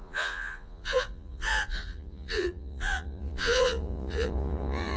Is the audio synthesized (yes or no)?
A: yes